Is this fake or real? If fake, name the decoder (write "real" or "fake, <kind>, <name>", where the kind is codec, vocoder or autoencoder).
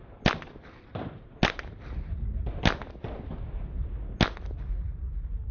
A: real